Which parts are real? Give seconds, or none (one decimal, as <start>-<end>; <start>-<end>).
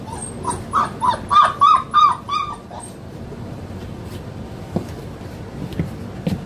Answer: 0.0-1.3; 5.2-6.5